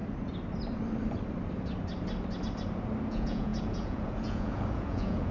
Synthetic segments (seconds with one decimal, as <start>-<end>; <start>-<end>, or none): 3.0-5.3